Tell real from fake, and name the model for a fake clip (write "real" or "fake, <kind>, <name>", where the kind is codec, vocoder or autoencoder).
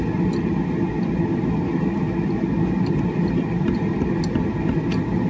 real